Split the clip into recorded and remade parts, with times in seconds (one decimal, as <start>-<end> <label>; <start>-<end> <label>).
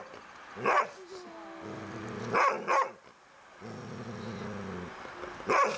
0.0-5.8 recorded